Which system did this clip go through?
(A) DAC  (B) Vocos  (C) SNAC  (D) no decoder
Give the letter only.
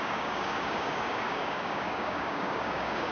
A